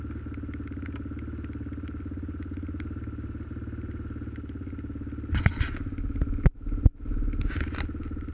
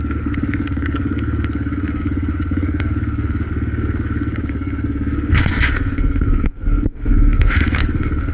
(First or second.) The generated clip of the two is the second